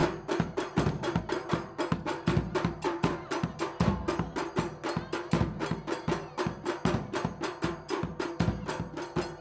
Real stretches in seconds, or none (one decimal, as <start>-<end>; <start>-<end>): 0.0-9.4